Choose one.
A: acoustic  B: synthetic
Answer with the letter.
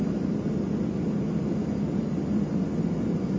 A